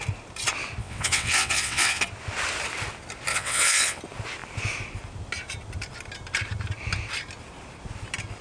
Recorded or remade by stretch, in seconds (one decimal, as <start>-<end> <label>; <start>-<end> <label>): 0.0-0.8 recorded; 0.8-2.0 remade; 2.0-3.3 recorded; 3.3-4.0 remade; 4.0-8.4 recorded